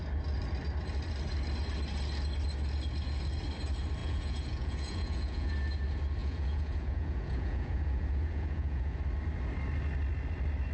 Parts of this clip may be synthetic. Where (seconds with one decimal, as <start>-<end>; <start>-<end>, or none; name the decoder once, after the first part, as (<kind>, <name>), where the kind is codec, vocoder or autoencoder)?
4.0-5.5 (vocoder, Vocos); 6.2-9.0